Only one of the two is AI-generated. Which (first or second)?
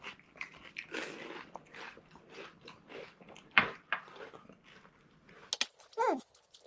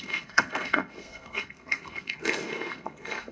second